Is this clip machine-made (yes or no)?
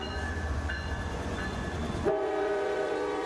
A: yes